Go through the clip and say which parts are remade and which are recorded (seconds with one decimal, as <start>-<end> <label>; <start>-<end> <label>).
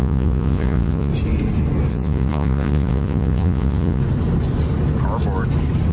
0.0-1.1 remade; 1.1-1.9 recorded; 1.9-4.0 remade; 4.0-5.9 recorded